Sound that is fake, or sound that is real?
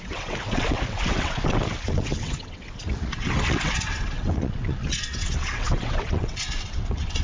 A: fake